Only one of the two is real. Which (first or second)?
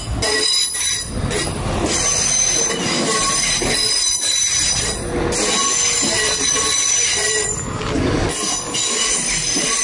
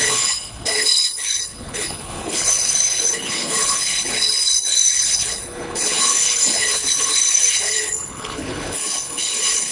first